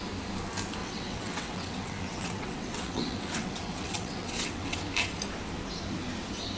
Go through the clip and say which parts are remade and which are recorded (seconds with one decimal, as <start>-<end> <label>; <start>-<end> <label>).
0.0-0.8 recorded; 0.8-4.8 remade; 4.8-6.6 recorded

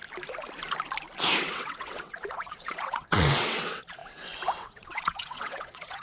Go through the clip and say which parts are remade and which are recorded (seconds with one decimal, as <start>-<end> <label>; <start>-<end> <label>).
0.0-1.4 recorded; 1.4-4.0 remade; 4.0-4.6 recorded; 4.6-6.0 remade

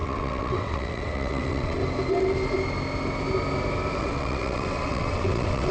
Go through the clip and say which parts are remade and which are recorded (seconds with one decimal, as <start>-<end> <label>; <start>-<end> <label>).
0.0-1.8 remade; 1.8-4.0 recorded; 4.0-5.7 remade

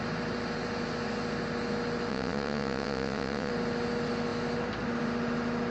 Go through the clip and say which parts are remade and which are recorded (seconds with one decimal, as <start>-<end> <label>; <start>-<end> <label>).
0.0-2.1 recorded; 2.1-3.5 remade; 3.5-5.7 recorded

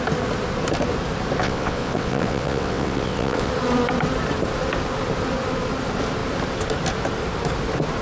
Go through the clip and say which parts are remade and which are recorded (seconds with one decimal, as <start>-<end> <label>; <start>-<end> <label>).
0.0-1.4 recorded; 1.4-3.5 remade; 3.5-8.0 recorded

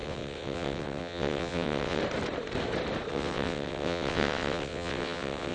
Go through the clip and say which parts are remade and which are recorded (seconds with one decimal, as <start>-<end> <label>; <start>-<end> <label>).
0.0-2.0 remade; 2.0-3.1 recorded; 3.1-5.5 remade